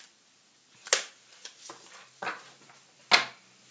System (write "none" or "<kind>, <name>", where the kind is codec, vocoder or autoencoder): none